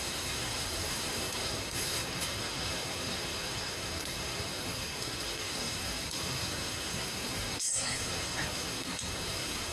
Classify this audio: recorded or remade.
remade